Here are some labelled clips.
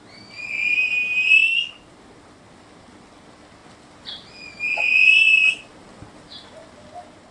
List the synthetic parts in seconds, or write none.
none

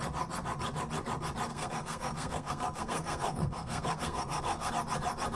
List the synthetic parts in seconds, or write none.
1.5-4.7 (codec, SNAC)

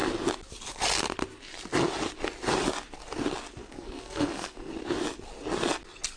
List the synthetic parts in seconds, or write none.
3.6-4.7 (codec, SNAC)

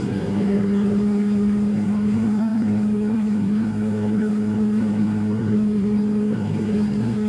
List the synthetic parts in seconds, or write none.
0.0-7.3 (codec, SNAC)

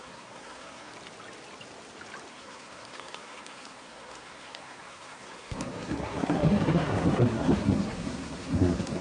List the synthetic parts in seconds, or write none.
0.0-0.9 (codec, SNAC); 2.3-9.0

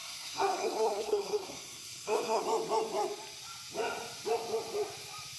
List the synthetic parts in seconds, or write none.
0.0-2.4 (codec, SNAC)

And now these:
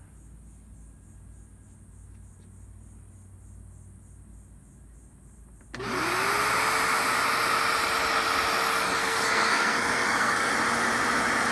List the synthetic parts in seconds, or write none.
9.0-10.5 (codec, SNAC)

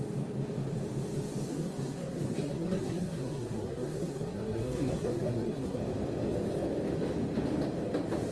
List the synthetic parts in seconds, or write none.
1.5-5.8 (codec, SNAC)